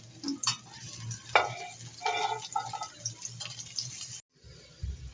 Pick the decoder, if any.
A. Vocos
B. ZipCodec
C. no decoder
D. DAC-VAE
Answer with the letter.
C